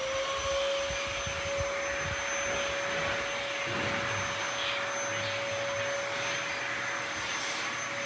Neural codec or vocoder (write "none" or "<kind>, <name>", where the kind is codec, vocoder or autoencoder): none